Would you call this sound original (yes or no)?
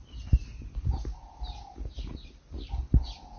yes